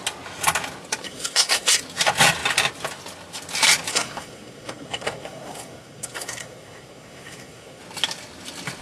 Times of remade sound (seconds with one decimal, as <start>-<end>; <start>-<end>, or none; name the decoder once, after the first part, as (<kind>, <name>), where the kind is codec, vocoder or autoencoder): 1.0-1.8 (codec, SNAC); 3.9-7.8